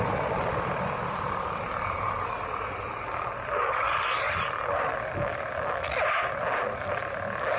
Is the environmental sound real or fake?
real